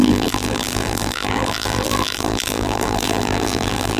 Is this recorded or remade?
remade